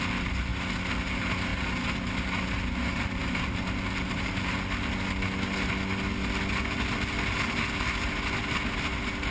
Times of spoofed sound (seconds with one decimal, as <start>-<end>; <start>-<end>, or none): 3.2-4.5